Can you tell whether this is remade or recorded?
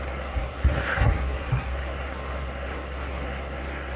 remade